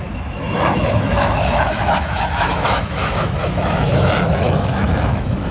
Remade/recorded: remade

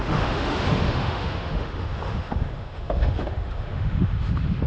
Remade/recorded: remade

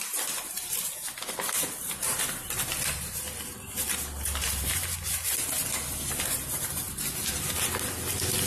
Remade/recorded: recorded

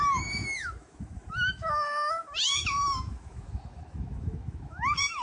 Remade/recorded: remade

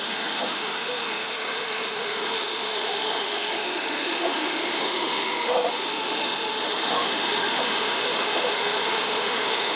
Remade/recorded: remade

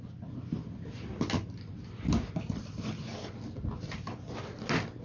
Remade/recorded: recorded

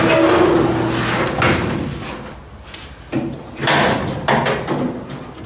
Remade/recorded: recorded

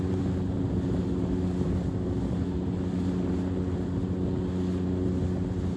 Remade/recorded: recorded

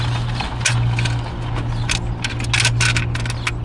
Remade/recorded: recorded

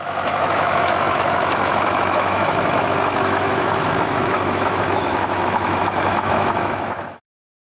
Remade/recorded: remade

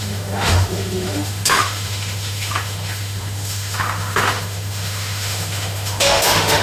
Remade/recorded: remade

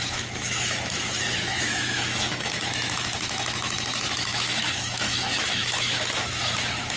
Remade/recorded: remade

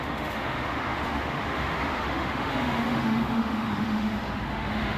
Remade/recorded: remade